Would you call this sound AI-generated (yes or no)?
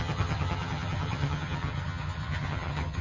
yes